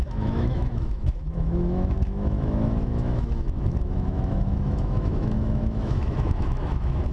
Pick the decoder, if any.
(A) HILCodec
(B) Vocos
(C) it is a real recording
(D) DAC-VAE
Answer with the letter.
D